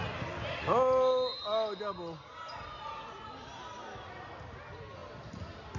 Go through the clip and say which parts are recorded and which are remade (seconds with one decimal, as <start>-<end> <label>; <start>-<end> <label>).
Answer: 0.0-5.8 recorded